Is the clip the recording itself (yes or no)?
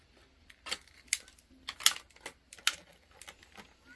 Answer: yes